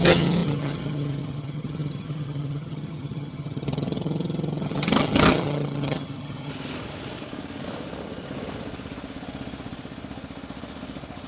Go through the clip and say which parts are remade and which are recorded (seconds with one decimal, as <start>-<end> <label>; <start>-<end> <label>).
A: 0.0-6.5 remade; 6.5-11.3 recorded

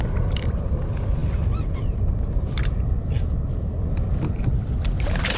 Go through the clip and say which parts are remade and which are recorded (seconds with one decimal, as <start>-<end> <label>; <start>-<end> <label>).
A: 0.0-5.4 recorded